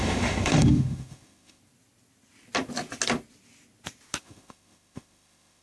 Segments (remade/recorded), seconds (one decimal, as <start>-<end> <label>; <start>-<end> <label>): 0.0-1.6 remade; 1.6-4.2 recorded; 4.2-5.6 remade